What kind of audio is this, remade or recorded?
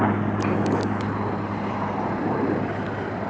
recorded